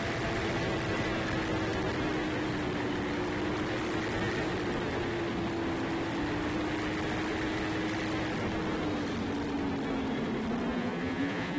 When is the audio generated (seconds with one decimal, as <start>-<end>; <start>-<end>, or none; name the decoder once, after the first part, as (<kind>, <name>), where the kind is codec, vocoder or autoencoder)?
10.7-11.6 (vocoder, Vocos)